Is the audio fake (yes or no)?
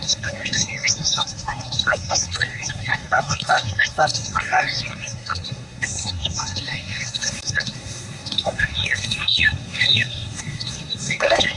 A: yes